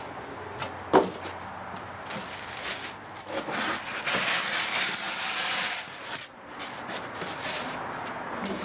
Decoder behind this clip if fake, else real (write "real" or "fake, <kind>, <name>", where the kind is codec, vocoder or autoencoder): real